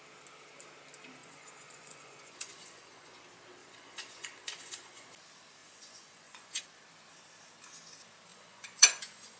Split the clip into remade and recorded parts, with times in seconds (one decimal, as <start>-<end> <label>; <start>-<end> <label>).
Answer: 0.0-1.2 recorded; 1.2-3.2 remade; 3.2-3.6 recorded; 3.6-5.1 remade; 5.1-5.6 recorded; 5.6-6.6 remade; 6.6-8.3 recorded; 8.3-9.4 remade